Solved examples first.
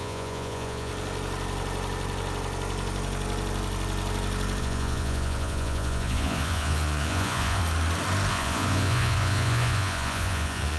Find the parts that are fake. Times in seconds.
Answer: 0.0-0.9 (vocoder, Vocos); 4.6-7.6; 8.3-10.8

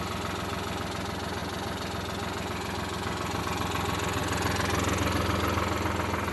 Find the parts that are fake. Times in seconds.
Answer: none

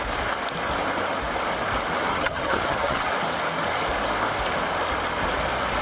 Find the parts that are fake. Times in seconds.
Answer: 2.1-3.1 (vocoder, HiFi-GAN)